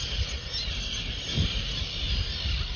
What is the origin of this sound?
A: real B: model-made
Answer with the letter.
A